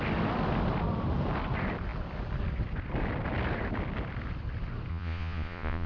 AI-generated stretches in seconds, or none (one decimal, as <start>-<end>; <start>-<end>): 4.9-5.9